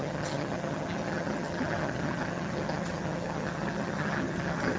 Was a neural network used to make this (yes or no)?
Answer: yes